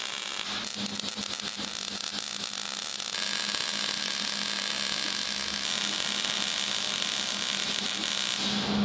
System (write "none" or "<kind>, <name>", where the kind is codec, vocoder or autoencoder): none